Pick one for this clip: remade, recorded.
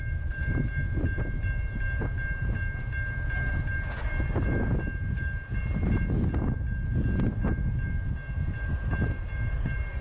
recorded